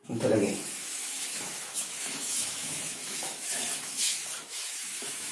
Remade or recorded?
remade